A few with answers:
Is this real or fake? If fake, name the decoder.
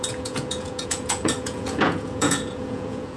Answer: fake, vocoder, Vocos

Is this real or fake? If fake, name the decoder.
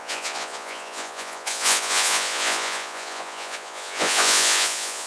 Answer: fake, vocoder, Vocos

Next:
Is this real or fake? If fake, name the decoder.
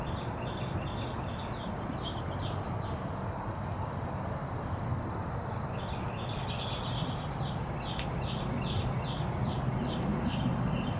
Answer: real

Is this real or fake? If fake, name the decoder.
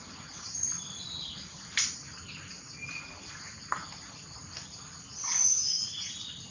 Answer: real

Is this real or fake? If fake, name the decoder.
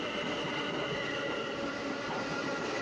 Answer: real